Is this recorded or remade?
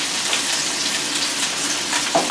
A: remade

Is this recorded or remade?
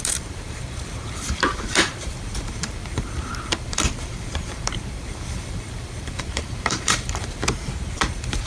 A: remade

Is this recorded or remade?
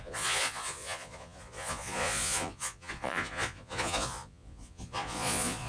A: remade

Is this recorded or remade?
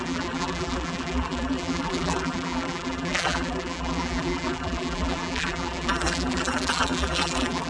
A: remade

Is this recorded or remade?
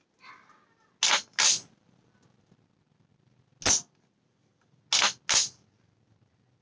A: recorded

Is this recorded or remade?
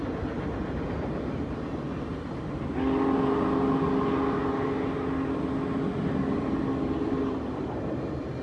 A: recorded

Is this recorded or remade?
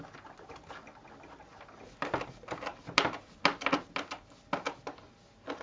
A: recorded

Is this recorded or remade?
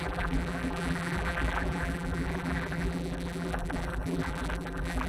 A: remade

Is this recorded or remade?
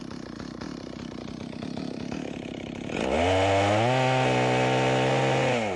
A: recorded